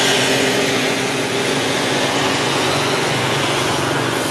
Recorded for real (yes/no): no